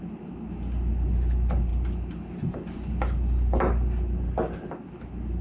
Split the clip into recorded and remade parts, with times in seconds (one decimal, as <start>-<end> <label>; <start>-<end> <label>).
0.0-5.4 recorded